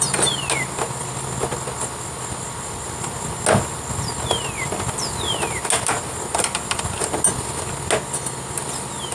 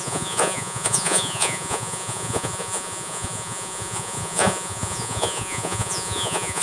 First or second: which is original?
first